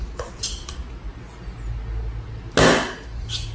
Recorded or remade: recorded